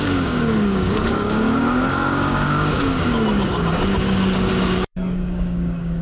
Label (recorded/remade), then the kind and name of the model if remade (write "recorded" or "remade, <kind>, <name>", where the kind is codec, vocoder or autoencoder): remade, codec, DAC